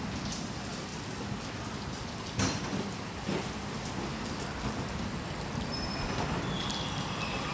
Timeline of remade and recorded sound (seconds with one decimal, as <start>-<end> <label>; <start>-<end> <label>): 0.0-7.5 recorded